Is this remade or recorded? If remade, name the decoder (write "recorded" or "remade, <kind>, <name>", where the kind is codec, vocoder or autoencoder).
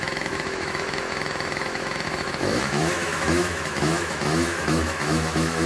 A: remade, autoencoder, DAC-VAE